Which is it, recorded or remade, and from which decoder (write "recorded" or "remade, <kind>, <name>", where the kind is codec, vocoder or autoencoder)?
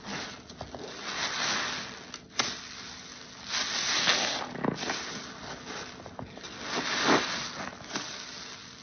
recorded